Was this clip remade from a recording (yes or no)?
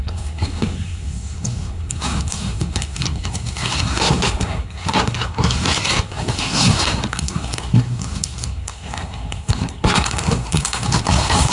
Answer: yes